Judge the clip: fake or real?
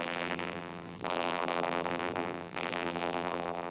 fake